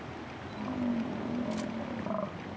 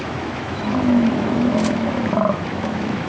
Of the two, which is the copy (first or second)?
second